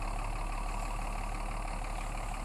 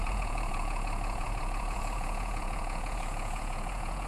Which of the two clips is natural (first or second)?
first